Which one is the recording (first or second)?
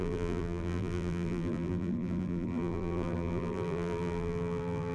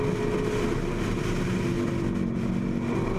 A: second